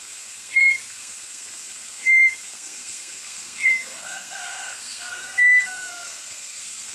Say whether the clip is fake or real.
fake